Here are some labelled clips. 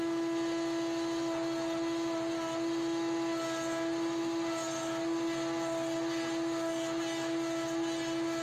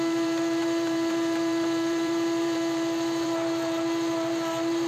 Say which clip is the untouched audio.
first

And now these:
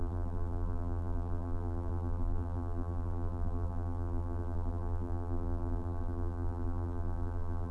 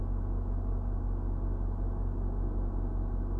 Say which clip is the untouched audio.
second